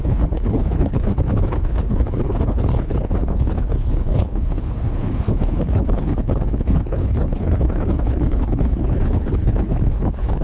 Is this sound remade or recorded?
remade